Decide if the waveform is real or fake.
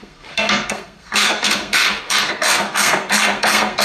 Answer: fake